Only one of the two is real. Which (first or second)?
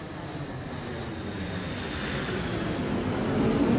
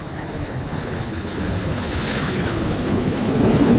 first